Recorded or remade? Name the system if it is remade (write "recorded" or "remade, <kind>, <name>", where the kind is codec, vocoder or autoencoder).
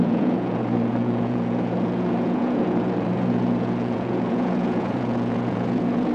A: remade, vocoder, Vocos